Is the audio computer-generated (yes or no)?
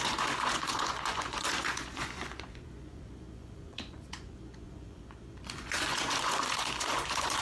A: yes